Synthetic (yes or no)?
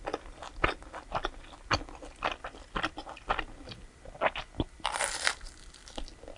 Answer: no